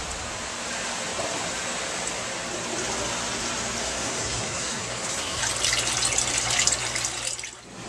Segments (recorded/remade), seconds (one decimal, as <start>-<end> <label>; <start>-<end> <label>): 0.0-3.8 recorded; 3.8-5.4 remade; 5.4-7.9 recorded